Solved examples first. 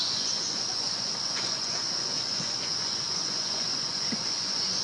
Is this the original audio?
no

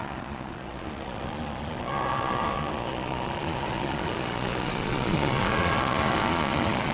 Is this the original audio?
no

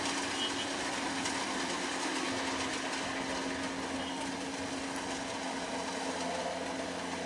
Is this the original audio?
yes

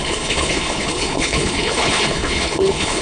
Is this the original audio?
no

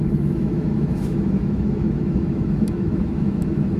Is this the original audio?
no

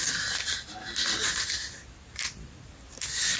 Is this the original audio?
yes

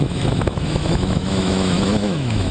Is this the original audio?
no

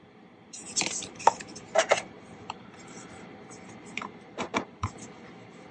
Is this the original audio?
no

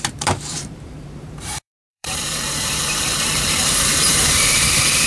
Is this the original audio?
no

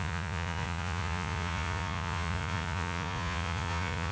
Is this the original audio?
no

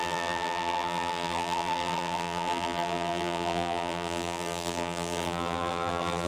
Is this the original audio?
no